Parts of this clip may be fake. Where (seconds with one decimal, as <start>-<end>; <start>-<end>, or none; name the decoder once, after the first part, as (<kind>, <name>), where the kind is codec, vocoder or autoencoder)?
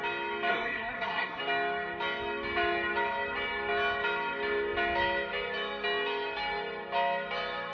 0.5-1.4 (codec, SNAC)